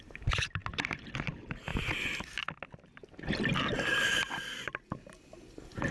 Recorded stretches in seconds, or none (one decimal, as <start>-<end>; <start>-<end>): 0.0-5.9